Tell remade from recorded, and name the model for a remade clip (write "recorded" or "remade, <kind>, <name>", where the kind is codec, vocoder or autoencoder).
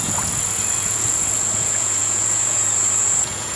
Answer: remade, vocoder, Vocos